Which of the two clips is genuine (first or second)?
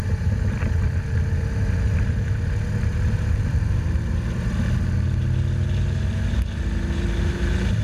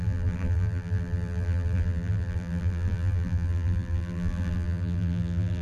first